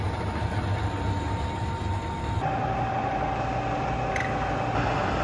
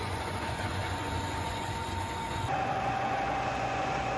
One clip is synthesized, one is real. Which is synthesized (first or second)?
second